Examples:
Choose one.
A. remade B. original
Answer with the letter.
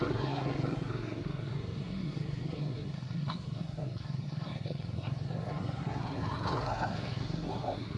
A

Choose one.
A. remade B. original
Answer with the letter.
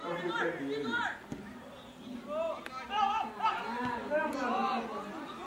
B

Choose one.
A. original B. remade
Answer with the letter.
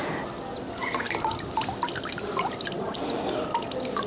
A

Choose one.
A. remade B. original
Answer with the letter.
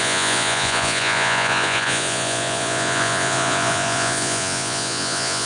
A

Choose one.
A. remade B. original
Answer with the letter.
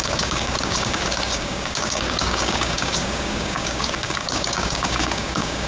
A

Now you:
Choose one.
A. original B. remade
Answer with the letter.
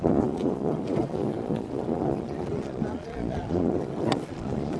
B